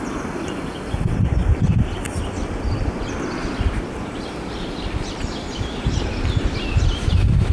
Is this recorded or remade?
recorded